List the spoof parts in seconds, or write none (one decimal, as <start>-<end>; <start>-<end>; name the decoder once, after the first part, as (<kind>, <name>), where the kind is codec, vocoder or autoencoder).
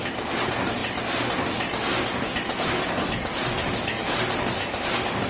none